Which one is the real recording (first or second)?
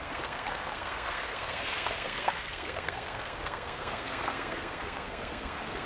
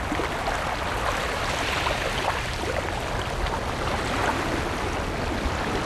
second